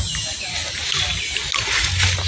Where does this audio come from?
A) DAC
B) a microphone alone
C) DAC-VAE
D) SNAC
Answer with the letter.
B